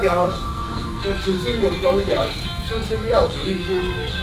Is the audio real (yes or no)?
no